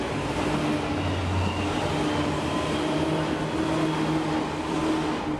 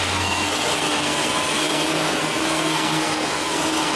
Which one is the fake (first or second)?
second